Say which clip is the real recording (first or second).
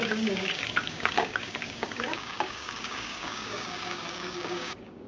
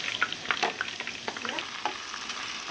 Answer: second